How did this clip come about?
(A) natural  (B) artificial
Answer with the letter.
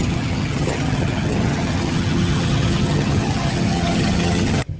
B